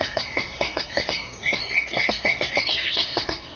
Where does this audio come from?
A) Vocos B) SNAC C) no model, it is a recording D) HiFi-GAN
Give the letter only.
B